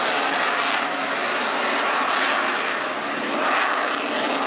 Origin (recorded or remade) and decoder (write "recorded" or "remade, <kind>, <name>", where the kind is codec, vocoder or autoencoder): recorded